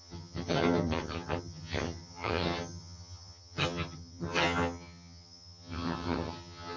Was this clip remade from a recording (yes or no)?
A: yes